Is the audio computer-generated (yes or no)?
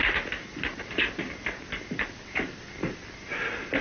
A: no